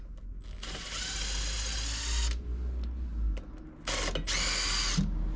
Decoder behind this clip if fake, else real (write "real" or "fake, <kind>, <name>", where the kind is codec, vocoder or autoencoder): real